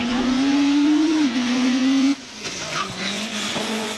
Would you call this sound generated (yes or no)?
yes